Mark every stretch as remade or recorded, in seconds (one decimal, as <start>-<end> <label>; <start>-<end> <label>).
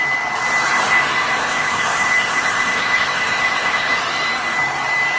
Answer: 0.0-1.4 recorded; 1.4-3.9 remade; 3.9-5.2 recorded